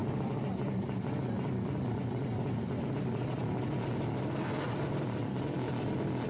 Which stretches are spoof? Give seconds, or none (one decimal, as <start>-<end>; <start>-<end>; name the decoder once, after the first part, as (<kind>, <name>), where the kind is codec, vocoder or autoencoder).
none